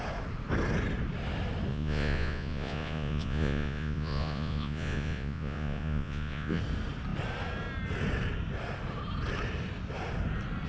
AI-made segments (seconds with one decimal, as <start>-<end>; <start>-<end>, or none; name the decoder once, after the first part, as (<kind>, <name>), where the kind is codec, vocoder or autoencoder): 1.7-6.6 (vocoder, Vocos)